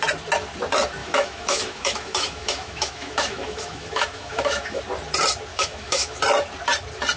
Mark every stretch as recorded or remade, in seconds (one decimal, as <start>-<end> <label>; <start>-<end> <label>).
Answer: 0.0-1.0 recorded; 1.0-4.8 remade; 4.8-5.5 recorded; 5.5-6.2 remade; 6.2-7.2 recorded